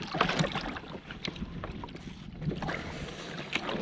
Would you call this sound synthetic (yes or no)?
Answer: no